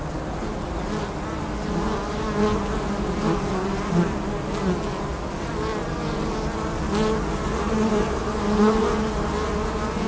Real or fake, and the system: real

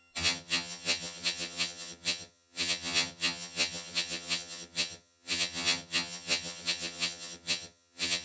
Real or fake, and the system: fake, vocoder, HiFi-GAN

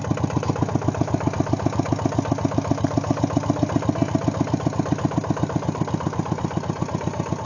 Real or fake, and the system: real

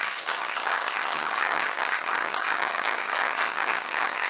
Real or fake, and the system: fake, vocoder, HiFi-GAN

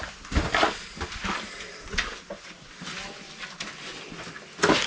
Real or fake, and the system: real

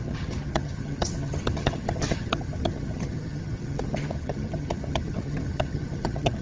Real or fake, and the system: fake, vocoder, HiFi-GAN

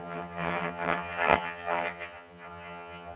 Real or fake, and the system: fake, vocoder, HiFi-GAN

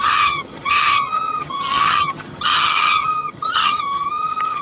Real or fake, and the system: fake, vocoder, HiFi-GAN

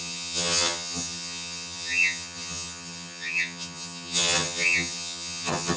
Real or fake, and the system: fake, vocoder, HiFi-GAN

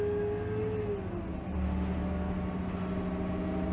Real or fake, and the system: real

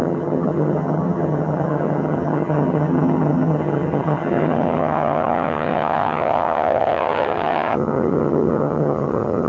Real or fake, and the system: fake, vocoder, HiFi-GAN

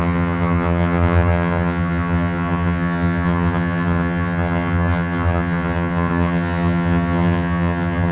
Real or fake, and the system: fake, vocoder, HiFi-GAN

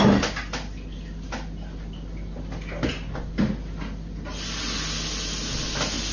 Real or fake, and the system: real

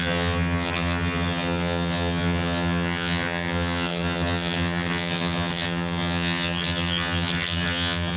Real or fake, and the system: fake, vocoder, HiFi-GAN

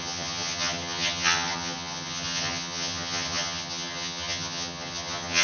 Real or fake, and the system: fake, vocoder, HiFi-GAN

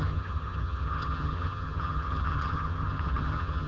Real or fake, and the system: fake, vocoder, HiFi-GAN